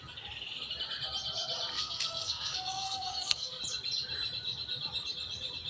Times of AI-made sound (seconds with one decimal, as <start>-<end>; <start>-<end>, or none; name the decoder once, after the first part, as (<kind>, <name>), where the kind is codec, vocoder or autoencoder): 1.7-3.6 (codec, SNAC)